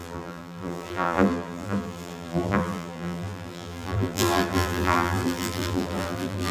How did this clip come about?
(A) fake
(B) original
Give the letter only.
A